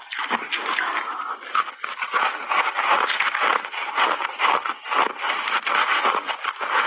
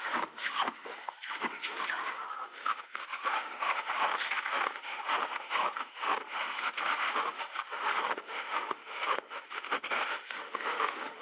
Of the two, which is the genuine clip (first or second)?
first